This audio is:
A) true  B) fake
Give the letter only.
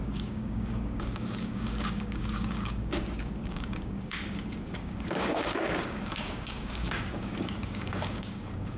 B